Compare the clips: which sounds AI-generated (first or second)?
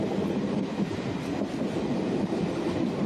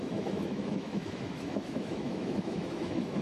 second